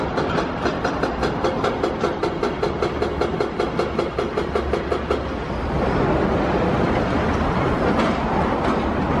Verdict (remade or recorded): recorded